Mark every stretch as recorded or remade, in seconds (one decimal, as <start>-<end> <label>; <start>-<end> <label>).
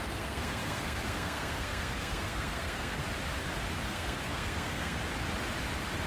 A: 0.0-3.0 remade; 3.0-3.9 recorded; 3.9-5.0 remade; 5.0-6.1 recorded